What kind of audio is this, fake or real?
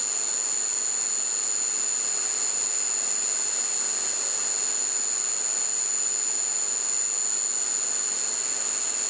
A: real